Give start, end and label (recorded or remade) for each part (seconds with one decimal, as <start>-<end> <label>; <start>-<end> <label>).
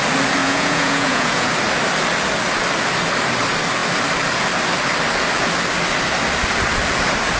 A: 0.0-0.4 recorded; 0.4-1.5 remade; 1.5-7.4 recorded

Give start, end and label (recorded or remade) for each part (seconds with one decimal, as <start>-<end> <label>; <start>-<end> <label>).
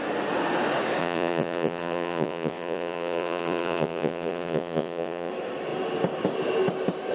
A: 0.0-1.0 recorded; 1.0-5.3 remade; 5.3-7.1 recorded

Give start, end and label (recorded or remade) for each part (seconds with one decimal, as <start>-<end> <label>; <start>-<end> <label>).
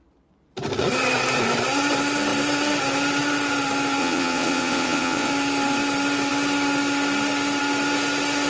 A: 0.0-4.0 recorded; 4.0-5.3 remade; 5.3-8.5 recorded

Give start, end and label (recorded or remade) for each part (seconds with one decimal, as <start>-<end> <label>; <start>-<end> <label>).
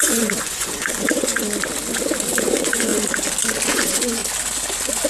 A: 0.0-1.3 remade; 1.3-2.3 recorded; 2.3-2.9 remade; 2.9-3.7 recorded; 3.7-4.2 remade; 4.2-5.1 recorded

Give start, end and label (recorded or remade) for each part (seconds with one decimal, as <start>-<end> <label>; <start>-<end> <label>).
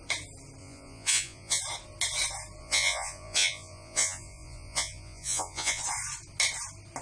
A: 0.0-0.6 recorded; 0.6-1.6 remade; 1.6-2.6 recorded; 2.6-5.8 remade; 5.8-7.0 recorded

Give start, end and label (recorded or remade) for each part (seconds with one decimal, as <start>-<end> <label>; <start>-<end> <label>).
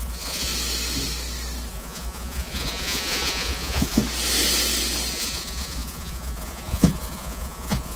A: 0.0-0.5 remade; 0.5-1.7 recorded; 1.7-4.0 remade; 4.0-5.1 recorded; 5.1-8.0 remade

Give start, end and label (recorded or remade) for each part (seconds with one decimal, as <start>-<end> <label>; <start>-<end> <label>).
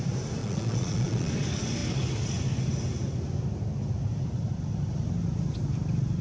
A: 0.0-0.4 recorded; 0.4-1.3 remade; 1.3-6.2 recorded